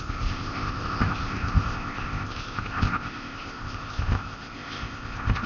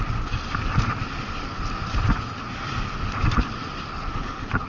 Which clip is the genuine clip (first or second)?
second